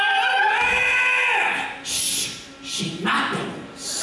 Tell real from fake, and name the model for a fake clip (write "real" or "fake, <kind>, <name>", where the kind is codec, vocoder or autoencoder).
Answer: real